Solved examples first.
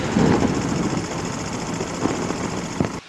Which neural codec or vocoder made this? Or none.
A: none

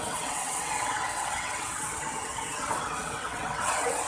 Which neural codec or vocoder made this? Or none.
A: vocoder, WaveNeXt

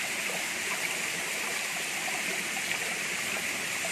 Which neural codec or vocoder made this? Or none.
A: none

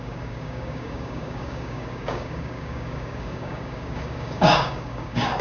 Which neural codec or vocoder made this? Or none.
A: codec, DAC